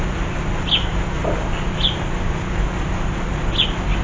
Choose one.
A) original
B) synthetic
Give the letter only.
A